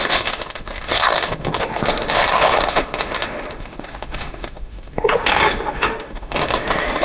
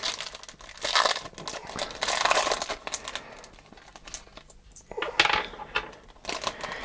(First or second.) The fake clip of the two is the first